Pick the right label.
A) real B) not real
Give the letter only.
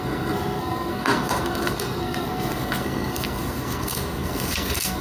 B